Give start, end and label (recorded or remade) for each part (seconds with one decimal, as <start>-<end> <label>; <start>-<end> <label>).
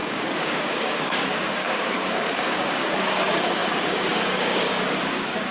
0.0-5.5 remade